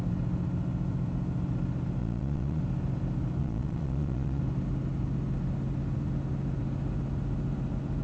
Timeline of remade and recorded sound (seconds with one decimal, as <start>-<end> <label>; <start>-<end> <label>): 0.0-2.0 recorded; 2.0-2.6 remade; 2.6-3.4 recorded; 3.4-4.4 remade; 4.4-8.0 recorded